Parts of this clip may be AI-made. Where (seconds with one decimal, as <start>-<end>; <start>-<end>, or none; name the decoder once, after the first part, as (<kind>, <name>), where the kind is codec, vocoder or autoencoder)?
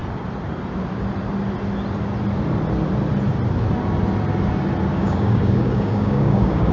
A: 4.9-6.7 (codec, DAC)